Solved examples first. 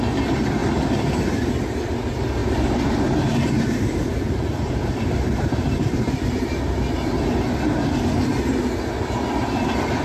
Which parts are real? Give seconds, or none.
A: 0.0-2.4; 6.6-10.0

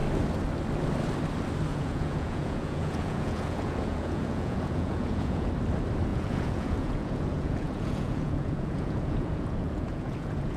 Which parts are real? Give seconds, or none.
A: 0.0-1.7; 5.5-6.1

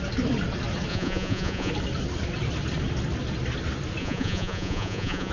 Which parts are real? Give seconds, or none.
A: 0.0-0.9; 1.7-4.0

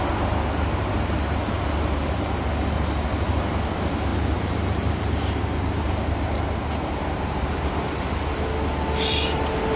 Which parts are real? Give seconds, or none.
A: 0.0-4.1; 7.8-9.8

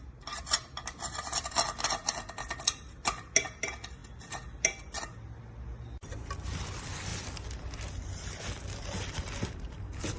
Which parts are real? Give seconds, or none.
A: 0.0-10.2

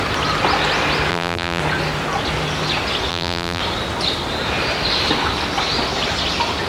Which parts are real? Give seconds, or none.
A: 0.0-1.1; 1.6-3.1; 3.6-6.7

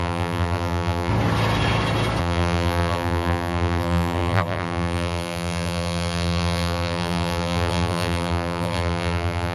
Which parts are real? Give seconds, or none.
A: 1.1-2.2

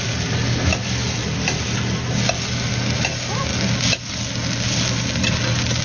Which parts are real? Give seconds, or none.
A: 0.0-5.8